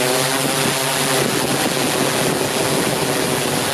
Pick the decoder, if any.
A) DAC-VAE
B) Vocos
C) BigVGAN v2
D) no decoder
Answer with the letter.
D